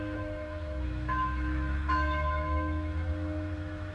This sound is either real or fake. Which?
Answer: fake